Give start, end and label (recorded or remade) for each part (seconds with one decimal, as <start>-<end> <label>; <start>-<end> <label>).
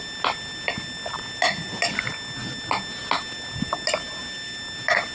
0.0-5.1 recorded